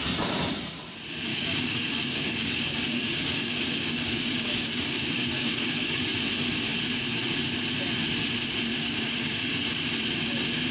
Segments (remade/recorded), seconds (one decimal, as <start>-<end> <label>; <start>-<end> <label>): 0.0-1.3 recorded; 1.3-6.0 remade; 6.0-8.7 recorded; 8.7-9.8 remade; 9.8-10.7 recorded